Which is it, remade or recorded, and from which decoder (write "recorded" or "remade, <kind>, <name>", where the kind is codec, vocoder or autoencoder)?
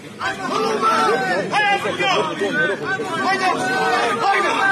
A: recorded